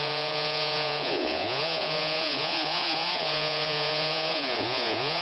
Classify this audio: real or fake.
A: fake